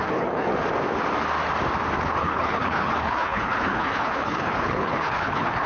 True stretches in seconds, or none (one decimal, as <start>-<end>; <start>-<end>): 0.5-2.0